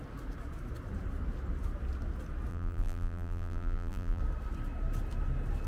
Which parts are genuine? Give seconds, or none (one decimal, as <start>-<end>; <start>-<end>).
0.0-2.5; 4.2-5.7